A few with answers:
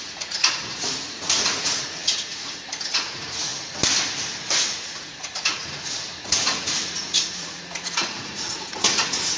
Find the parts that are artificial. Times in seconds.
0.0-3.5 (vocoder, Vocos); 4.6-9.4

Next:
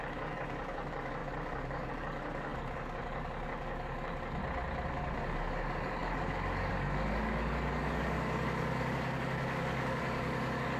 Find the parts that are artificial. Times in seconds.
0.0-4.4 (codec, DAC); 4.9-10.8

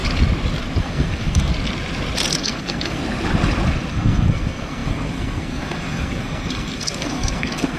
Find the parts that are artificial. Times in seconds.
0.8-1.5 (codec, SNAC); 2.4-3.0; 3.9-7.8

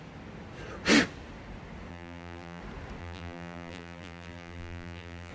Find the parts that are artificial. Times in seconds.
1.9-2.6 (vocoder, BigVGAN v2); 3.0-5.3

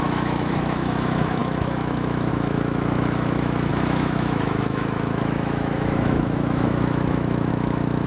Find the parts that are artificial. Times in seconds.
0.0-8.1 (autoencoder, DAC-VAE)